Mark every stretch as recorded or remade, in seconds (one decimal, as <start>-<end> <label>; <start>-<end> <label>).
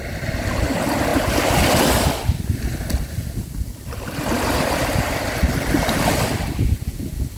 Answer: 0.0-7.4 recorded